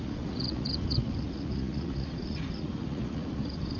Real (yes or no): no